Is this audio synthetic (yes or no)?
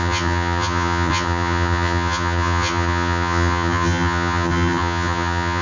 yes